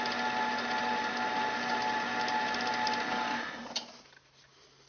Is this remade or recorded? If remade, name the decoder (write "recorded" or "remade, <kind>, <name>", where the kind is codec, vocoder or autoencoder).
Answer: recorded